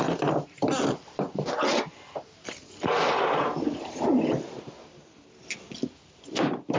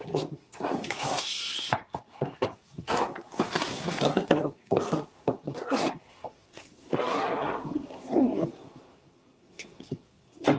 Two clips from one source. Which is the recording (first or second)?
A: first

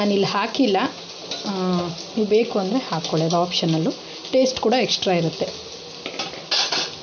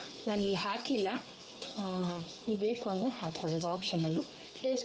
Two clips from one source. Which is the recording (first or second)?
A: first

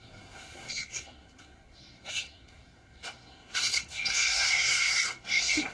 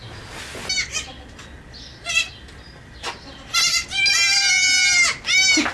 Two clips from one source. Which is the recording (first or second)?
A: second